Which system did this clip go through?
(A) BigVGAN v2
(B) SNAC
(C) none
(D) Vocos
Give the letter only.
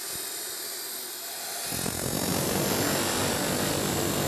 C